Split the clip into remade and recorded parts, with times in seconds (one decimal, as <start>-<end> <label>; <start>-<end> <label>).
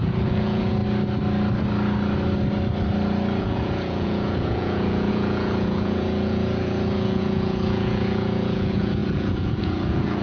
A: 0.0-0.8 remade; 0.8-3.4 recorded; 3.4-10.2 remade